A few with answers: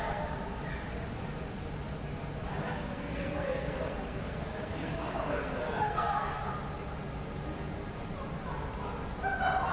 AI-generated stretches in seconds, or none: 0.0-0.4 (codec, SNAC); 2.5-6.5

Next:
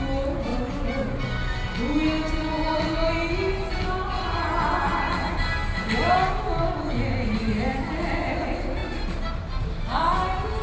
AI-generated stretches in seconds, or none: none

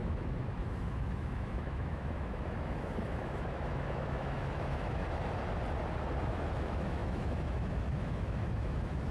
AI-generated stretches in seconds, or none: 0.0-5.0 (autoencoder, DAC-VAE); 6.2-9.1